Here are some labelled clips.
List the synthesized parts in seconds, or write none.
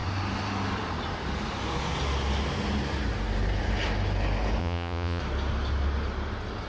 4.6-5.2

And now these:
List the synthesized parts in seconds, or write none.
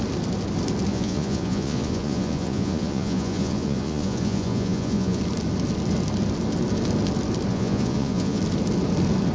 0.9-5.2; 7.5-8.4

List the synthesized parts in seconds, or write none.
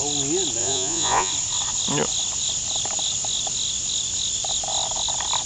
0.6-1.3